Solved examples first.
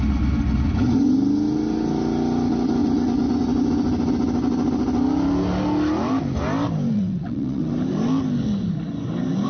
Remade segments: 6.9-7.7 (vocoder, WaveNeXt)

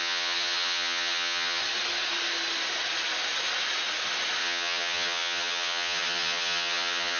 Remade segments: 0.0-1.6 (vocoder, HiFi-GAN); 4.4-7.2

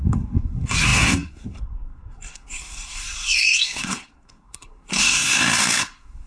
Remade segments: 0.0-6.3 (codec, SNAC)

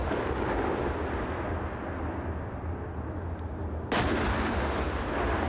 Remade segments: none

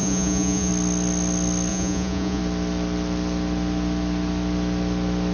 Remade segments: 0.0-0.7 (vocoder, Vocos); 1.7-2.4

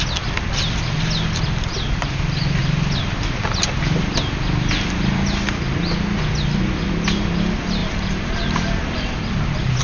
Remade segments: 7.8-9.8 (vocoder, BigVGAN v2)

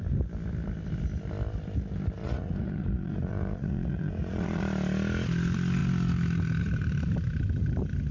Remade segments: 2.2-4.6 (vocoder, Vocos)